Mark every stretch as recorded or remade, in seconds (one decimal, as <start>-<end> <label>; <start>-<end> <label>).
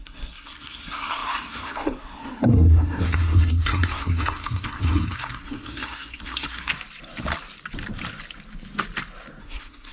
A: 0.0-6.7 remade; 6.7-9.4 recorded; 9.4-9.9 remade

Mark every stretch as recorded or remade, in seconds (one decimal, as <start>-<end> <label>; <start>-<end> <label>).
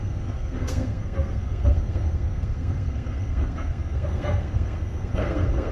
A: 0.0-5.7 remade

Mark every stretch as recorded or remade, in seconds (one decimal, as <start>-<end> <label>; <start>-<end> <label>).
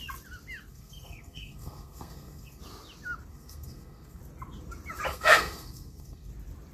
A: 0.0-0.7 recorded; 0.7-2.6 remade; 2.6-3.3 recorded; 3.3-4.2 remade; 4.2-5.1 recorded; 5.1-6.3 remade; 6.3-6.7 recorded